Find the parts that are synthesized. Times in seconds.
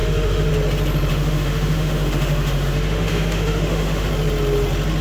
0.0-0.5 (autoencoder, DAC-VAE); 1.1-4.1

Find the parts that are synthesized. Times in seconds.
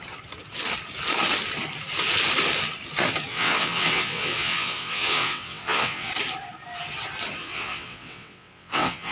3.3-6.1 (vocoder, WaveNeXt); 7.4-9.1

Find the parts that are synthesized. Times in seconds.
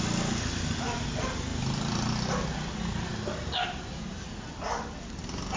none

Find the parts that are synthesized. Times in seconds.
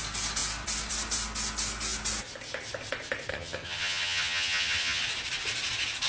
3.3-5.0 (vocoder, HiFi-GAN)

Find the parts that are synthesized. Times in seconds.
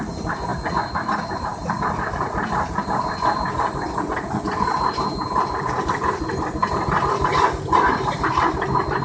6.6-7.3 (vocoder, BigVGAN v2)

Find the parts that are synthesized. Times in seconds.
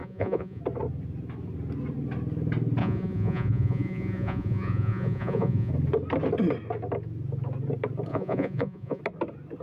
0.0-0.6 (vocoder, Vocos); 2.8-5.7; 8.1-9.0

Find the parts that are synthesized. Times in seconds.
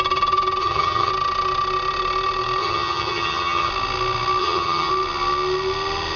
0.6-1.1 (vocoder, HiFi-GAN); 2.6-3.7; 4.4-4.9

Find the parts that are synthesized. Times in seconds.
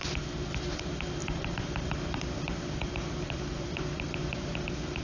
1.2-4.2 (vocoder, BigVGAN v2)